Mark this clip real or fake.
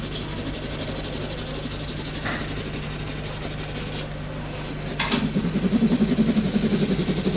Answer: real